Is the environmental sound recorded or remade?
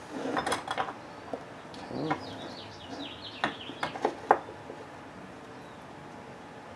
recorded